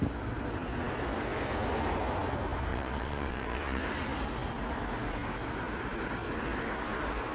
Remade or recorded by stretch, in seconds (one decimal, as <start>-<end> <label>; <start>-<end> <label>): 0.0-2.7 recorded; 2.7-3.8 remade; 3.8-7.3 recorded